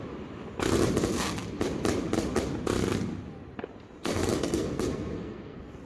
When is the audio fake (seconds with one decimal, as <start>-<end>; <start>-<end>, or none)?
4.0-5.8